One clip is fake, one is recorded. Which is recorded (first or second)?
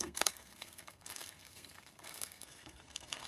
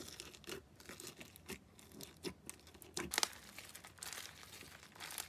second